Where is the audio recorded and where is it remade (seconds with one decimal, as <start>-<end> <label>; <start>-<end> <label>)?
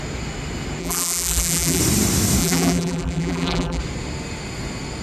0.0-0.8 recorded; 0.8-1.8 remade; 1.8-2.4 recorded; 2.4-3.8 remade; 3.8-5.0 recorded